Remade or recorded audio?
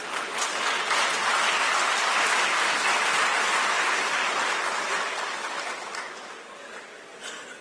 recorded